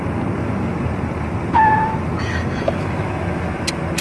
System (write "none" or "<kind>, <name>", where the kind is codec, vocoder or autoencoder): none